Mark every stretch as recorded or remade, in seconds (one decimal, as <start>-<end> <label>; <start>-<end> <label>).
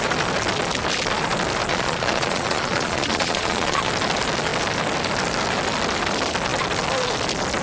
0.0-1.7 recorded; 1.7-3.9 remade; 3.9-7.6 recorded